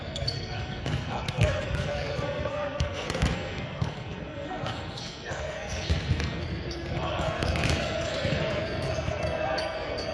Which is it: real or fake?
fake